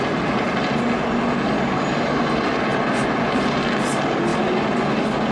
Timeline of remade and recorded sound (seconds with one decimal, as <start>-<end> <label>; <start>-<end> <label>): 0.0-5.3 recorded